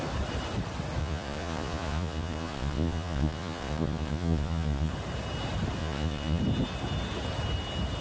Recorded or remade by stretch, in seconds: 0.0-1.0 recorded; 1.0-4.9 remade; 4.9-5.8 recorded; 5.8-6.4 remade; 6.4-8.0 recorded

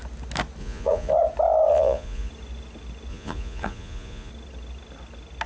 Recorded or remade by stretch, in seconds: 0.0-0.6 recorded; 0.6-1.1 remade; 1.1-1.7 recorded; 1.7-2.3 remade; 2.3-3.1 recorded; 3.1-4.3 remade; 4.3-5.5 recorded

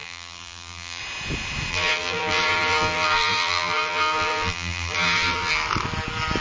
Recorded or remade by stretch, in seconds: 0.0-1.0 remade; 1.0-1.7 recorded; 1.7-5.5 remade; 5.5-6.4 recorded

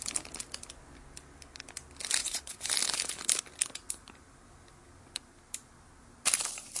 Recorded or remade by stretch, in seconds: 0.0-2.2 recorded; 2.2-2.7 remade; 2.7-6.8 recorded

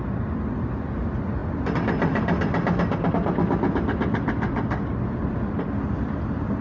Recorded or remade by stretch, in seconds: 0.0-6.6 recorded

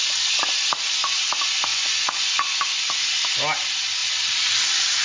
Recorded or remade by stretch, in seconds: 0.0-1.7 recorded; 1.7-2.6 remade; 2.6-5.0 recorded

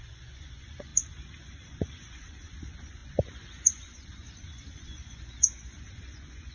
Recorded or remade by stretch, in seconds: 0.0-0.9 remade; 0.9-1.4 recorded; 1.4-6.5 remade